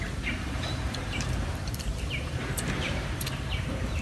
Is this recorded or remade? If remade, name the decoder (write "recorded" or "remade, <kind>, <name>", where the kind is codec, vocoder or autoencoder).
remade, vocoder, BigVGAN v2